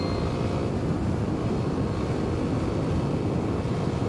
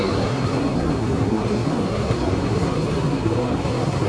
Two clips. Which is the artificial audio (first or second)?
second